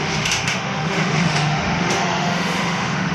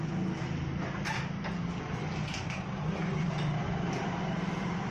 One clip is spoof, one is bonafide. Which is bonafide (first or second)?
second